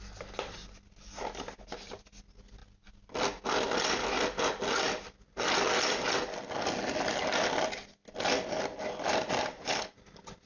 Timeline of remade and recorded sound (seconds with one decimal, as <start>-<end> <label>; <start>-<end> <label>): 0.0-10.5 recorded

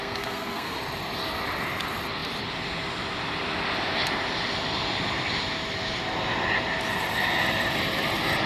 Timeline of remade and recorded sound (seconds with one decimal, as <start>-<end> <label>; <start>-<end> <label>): 0.0-0.8 remade; 0.8-8.5 recorded